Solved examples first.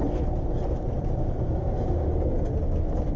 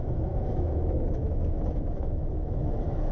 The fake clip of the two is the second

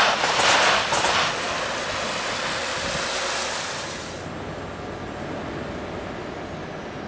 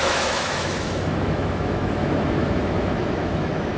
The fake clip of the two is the second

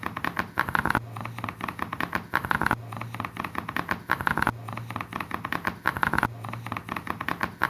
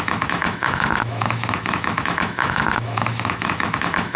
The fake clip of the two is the second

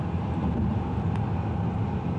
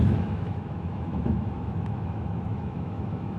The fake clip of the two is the second